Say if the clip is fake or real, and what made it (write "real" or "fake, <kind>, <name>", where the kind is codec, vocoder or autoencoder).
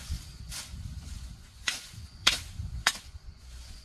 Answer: fake, vocoder, Vocos